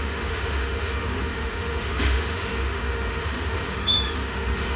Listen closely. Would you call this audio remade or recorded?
remade